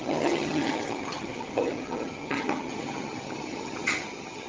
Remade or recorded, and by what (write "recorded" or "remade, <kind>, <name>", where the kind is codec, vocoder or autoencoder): remade, vocoder, HiFi-GAN